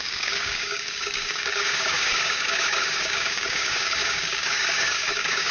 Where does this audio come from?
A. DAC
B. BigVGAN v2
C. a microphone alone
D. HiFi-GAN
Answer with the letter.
A